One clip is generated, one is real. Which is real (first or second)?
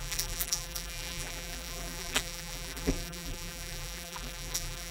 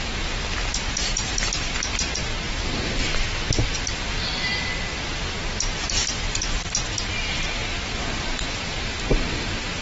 second